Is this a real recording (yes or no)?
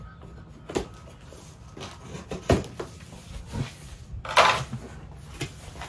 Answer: yes